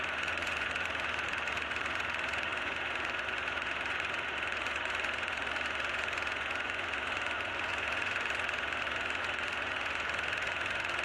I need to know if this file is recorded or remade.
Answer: remade